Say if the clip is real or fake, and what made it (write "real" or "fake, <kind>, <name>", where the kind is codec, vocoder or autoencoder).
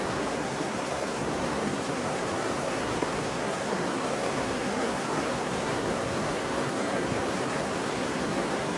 fake, codec, SNAC